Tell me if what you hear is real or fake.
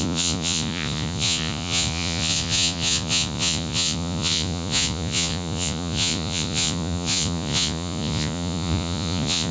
fake